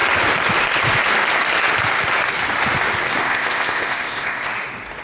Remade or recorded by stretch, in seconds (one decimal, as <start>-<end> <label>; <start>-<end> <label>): 0.0-3.2 recorded; 3.2-4.5 remade; 4.5-5.0 recorded